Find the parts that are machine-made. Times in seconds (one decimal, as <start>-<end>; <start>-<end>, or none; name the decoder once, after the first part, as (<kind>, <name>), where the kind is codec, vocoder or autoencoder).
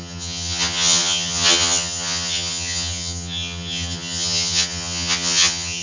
0.0-5.8 (vocoder, HiFi-GAN)